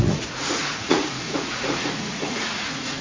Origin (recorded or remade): remade